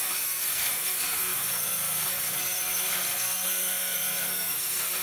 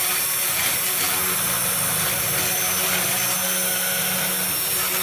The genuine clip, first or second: second